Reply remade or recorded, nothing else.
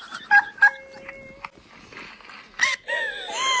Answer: recorded